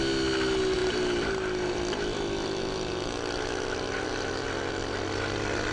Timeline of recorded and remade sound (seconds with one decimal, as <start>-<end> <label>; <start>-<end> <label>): 0.0-5.7 recorded